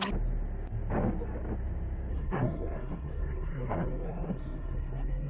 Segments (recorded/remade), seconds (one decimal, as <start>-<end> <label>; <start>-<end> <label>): 0.0-2.1 recorded; 2.1-5.3 remade

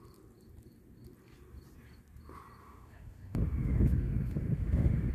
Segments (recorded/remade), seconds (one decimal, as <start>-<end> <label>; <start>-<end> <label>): 0.0-2.6 recorded; 2.6-5.1 remade

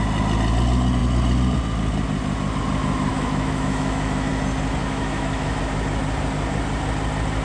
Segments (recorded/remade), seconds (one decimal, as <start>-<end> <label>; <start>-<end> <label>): 0.0-3.1 recorded; 3.1-4.3 remade; 4.3-4.8 recorded; 4.8-5.6 remade; 5.6-7.4 recorded

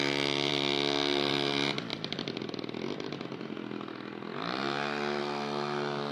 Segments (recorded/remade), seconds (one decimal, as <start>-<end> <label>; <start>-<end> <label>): 0.0-6.1 recorded

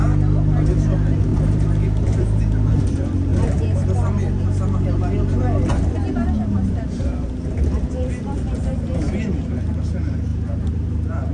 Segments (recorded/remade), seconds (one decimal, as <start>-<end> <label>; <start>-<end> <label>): 0.0-1.3 recorded; 1.3-2.8 remade; 2.8-11.3 recorded

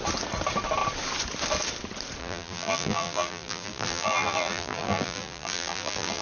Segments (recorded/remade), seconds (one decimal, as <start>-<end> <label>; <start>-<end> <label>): 0.0-2.2 recorded; 2.2-6.2 remade

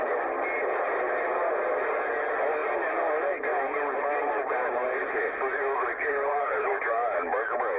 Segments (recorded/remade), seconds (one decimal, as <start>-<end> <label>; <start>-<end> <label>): 0.0-6.0 recorded; 6.0-6.8 remade; 6.8-7.8 recorded

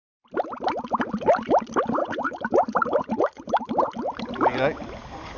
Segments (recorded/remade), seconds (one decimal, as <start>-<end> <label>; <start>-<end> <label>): 0.0-2.0 recorded; 2.0-3.6 remade; 3.6-5.4 recorded